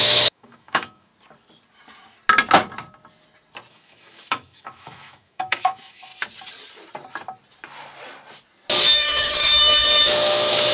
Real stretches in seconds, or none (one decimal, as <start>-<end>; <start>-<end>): 1.1-3.7; 6.1-8.8